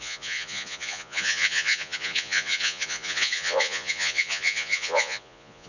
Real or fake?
fake